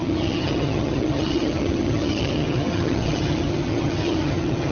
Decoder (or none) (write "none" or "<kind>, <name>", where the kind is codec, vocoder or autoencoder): vocoder, HiFi-GAN